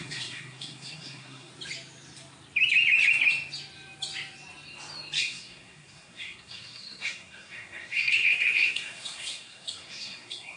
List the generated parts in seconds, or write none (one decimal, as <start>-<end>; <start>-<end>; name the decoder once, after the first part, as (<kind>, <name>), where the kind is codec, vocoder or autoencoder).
0.0-1.5 (codec, SNAC); 5.2-10.6